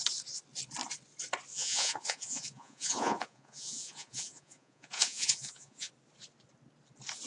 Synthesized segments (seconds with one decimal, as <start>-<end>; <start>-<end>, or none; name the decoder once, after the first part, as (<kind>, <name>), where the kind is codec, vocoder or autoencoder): 1.5-5.9 (vocoder, Vocos)